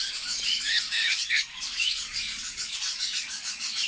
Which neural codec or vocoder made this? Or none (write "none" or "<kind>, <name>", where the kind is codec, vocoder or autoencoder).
codec, DAC